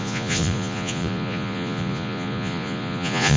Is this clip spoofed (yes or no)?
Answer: yes